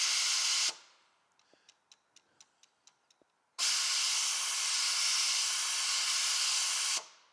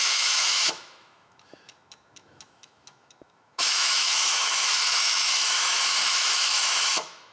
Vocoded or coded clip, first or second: second